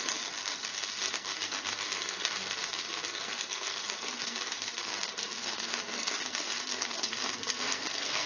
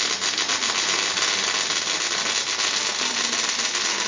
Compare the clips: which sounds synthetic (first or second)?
first